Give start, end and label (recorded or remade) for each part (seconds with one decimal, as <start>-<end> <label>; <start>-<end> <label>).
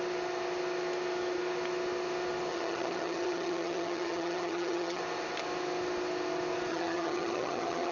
0.0-2.5 recorded; 2.5-5.0 remade; 5.0-6.7 recorded; 6.7-7.9 remade